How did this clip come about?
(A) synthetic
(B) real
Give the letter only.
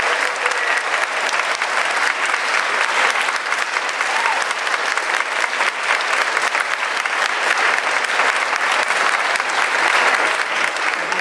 B